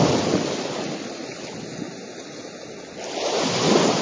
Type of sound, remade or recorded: recorded